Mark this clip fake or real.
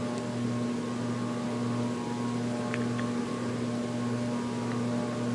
real